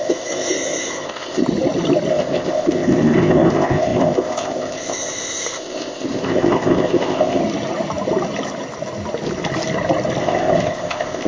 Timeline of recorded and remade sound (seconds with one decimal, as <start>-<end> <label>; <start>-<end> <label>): 0.0-1.4 remade; 1.4-2.1 recorded; 2.1-7.4 remade; 7.4-10.2 recorded; 10.2-11.3 remade